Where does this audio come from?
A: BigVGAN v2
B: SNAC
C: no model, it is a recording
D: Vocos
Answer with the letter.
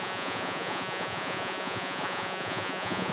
D